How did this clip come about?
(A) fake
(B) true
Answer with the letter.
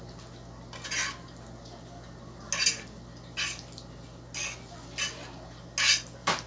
B